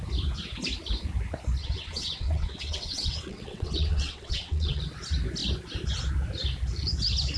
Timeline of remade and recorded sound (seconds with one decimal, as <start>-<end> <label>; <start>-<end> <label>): 0.0-1.6 recorded; 1.6-4.8 remade; 4.8-7.4 recorded